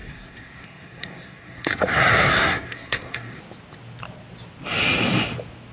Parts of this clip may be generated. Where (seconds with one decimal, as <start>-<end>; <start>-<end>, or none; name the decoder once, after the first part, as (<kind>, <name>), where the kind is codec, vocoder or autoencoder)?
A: 0.0-3.4 (codec, SNAC)